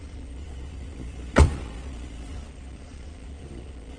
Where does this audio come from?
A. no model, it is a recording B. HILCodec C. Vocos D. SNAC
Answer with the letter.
C